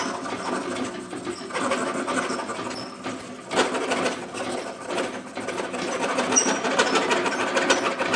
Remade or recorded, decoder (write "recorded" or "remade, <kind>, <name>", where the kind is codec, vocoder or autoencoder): recorded